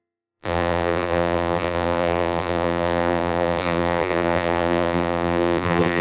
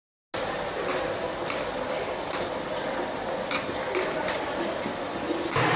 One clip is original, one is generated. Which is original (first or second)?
second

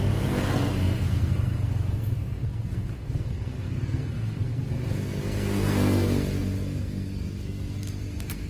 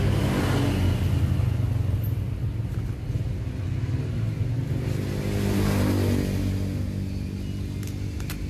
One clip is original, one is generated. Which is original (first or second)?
second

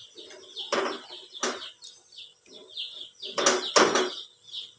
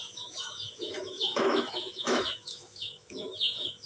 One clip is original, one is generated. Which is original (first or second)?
first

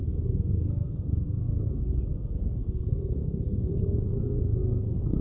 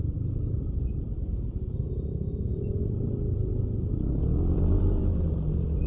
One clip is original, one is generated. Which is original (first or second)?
second